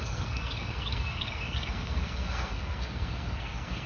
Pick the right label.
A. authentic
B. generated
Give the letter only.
B